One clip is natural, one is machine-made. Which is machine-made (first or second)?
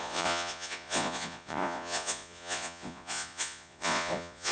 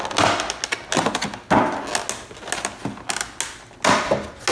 first